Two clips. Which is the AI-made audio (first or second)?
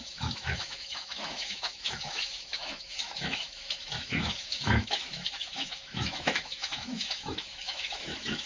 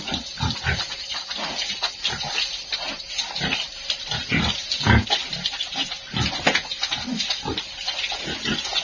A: first